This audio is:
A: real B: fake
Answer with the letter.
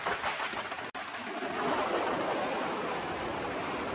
A